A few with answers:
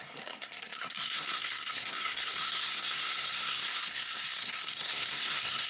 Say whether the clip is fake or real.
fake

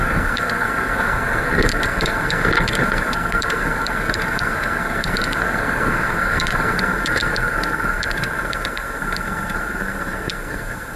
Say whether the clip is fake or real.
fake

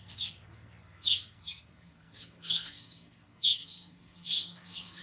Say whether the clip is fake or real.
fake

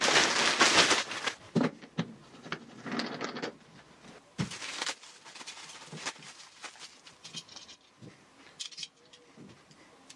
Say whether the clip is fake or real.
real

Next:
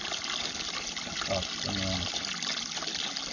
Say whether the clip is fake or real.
real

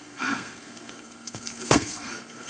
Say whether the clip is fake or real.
fake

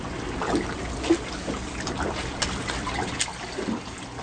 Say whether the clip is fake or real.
real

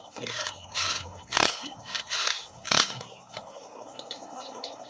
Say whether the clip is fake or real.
fake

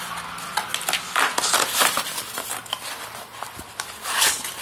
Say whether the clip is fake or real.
real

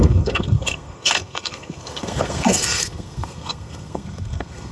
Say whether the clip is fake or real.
fake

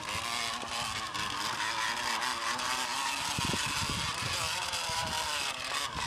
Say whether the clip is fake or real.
real